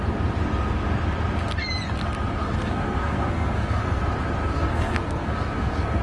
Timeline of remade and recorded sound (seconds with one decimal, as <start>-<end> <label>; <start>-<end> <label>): 0.0-2.4 recorded; 2.4-4.0 remade; 4.0-4.4 recorded; 4.4-6.0 remade